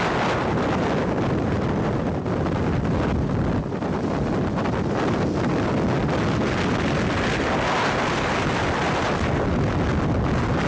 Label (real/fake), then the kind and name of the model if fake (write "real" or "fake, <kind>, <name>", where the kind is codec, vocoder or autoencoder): real